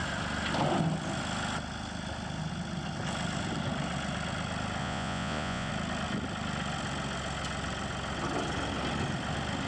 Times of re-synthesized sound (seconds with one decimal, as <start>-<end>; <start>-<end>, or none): 4.8-5.7